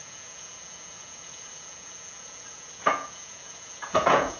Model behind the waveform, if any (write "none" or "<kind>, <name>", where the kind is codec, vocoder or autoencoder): vocoder, Vocos